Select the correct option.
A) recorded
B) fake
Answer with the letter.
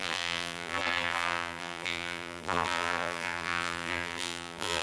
B